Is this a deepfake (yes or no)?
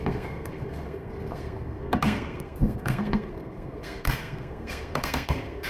yes